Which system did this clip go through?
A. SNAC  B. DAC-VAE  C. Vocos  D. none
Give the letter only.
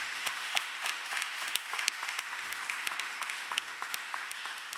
B